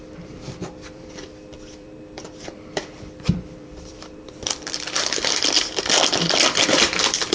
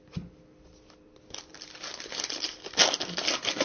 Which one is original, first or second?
second